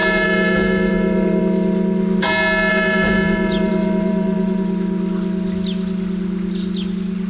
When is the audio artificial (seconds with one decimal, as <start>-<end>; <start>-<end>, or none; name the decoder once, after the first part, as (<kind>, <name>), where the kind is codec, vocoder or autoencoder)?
0.0-1.4 (vocoder, BigVGAN v2); 2.7-4.6